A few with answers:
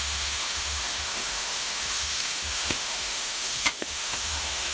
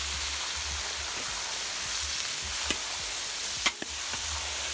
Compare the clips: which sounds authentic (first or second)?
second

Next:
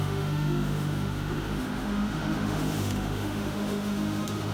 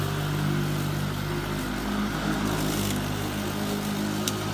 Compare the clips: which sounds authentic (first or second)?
second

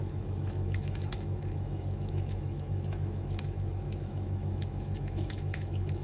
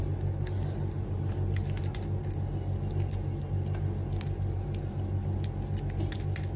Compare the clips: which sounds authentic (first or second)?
second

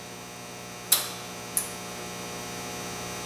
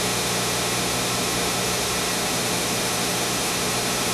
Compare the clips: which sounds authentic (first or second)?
first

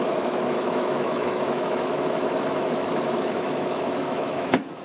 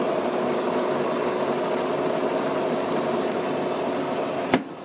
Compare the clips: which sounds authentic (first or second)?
second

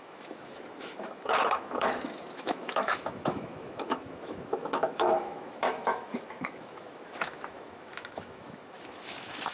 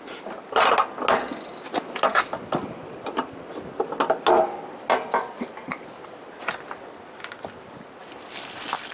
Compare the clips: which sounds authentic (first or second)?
second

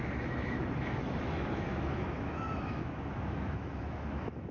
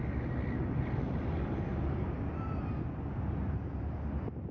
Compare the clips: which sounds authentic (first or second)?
second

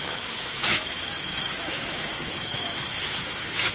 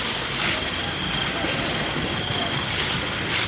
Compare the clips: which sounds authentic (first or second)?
second